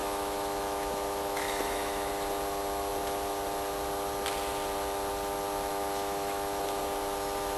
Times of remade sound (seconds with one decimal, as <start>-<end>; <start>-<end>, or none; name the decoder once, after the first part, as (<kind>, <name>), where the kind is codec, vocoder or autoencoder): 0.0-2.1 (autoencoder, DAC-VAE); 5.7-6.8